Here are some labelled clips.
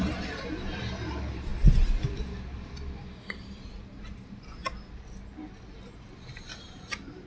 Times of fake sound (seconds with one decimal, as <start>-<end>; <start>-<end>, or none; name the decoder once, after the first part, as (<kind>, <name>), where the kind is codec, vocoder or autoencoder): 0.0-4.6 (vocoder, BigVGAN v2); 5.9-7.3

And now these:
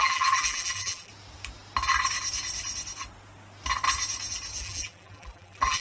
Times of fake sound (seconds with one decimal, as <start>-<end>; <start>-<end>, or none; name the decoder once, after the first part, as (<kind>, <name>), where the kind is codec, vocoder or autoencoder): 0.0-1.1 (vocoder, BigVGAN v2); 4.6-5.8

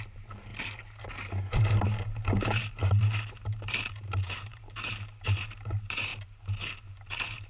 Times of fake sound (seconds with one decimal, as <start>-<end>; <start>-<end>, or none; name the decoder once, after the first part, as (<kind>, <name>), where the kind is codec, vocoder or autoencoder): 0.0-0.5 (vocoder, BigVGAN v2); 1.1-2.8; 3.7-6.1; 6.9-7.5

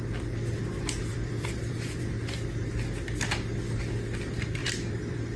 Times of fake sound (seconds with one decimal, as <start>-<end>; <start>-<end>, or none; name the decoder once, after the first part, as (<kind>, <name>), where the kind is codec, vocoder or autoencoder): 1.1-2.0 (vocoder, BigVGAN v2); 4.6-5.4

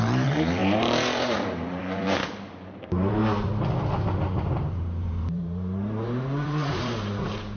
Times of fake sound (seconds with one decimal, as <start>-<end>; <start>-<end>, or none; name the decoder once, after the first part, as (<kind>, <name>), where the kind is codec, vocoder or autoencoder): 0.0-3.2 (vocoder, BigVGAN v2); 4.4-7.6

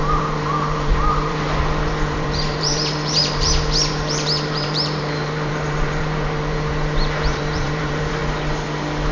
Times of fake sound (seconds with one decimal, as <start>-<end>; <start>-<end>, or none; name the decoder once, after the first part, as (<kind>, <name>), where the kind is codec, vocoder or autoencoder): 0.0-8.2 (vocoder, BigVGAN v2)